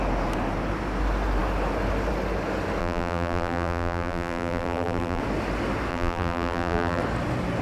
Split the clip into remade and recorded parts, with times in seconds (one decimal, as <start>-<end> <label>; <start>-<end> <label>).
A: 0.0-2.8 recorded; 2.8-5.2 remade; 5.2-5.9 recorded; 5.9-7.0 remade; 7.0-7.6 recorded